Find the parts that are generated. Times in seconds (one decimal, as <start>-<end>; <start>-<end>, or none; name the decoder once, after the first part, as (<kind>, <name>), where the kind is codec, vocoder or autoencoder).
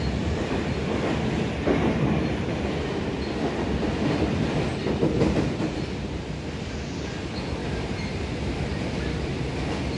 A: 4.7-6.4 (vocoder, BigVGAN v2); 7.6-9.4